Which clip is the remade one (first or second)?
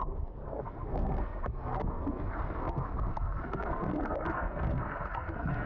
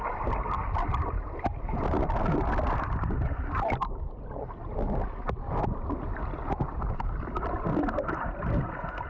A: first